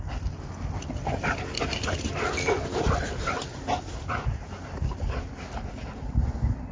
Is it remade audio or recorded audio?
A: recorded